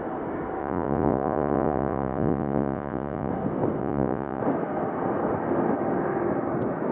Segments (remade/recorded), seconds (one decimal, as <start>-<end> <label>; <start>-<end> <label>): 0.0-0.6 recorded; 0.6-3.3 remade; 3.3-3.8 recorded; 3.8-4.4 remade; 4.4-6.9 recorded